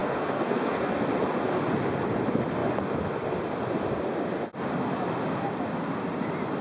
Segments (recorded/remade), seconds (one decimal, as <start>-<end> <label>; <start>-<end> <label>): 0.0-1.1 remade; 1.1-6.6 recorded